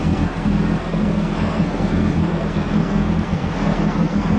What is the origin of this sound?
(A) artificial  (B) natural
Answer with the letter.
A